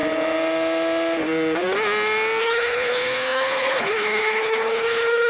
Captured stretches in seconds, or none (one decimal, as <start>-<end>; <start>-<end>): 0.0-2.4